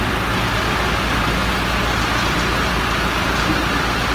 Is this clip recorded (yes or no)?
yes